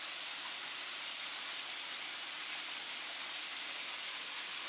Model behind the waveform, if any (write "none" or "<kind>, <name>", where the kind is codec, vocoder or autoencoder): none